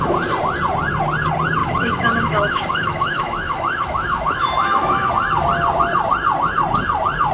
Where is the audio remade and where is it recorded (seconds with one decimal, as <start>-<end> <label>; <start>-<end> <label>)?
0.0-1.6 recorded; 1.6-5.1 remade; 5.1-7.3 recorded

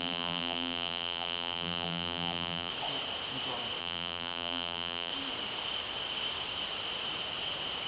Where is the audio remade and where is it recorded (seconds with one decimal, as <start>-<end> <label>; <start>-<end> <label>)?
0.0-2.7 remade; 2.7-3.8 recorded; 3.8-5.1 remade; 5.1-7.9 recorded

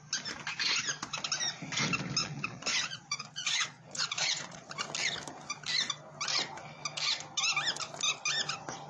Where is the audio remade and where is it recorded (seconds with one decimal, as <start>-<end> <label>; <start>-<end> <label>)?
0.0-2.2 recorded; 2.2-4.7 remade; 4.7-8.9 recorded

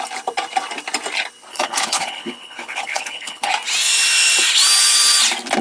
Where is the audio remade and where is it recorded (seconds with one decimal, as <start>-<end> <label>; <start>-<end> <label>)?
0.0-1.5 recorded; 1.5-3.5 remade; 3.5-5.6 recorded

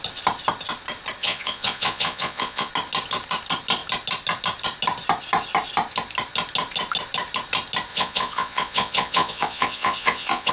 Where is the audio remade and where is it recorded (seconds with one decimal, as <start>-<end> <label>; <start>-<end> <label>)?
0.0-1.2 recorded; 1.2-2.7 remade; 2.7-7.9 recorded; 7.9-10.5 remade

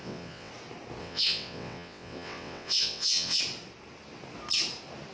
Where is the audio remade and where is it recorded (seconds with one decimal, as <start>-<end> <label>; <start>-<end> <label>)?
0.0-0.5 remade; 0.5-1.0 recorded; 1.0-3.4 remade; 3.4-5.1 recorded

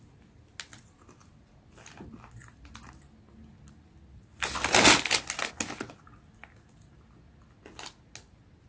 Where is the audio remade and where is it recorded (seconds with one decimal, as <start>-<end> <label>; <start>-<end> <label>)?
0.0-8.7 recorded